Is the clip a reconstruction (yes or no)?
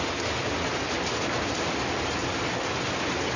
no